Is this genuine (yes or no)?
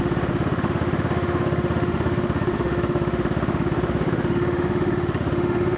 no